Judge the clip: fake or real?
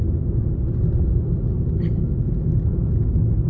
real